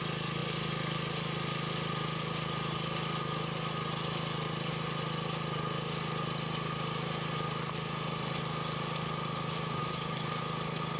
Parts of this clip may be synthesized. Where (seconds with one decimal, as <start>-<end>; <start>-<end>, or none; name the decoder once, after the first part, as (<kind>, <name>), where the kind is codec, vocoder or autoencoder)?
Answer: 9.8-10.4 (codec, DAC)